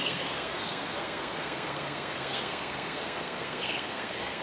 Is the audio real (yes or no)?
no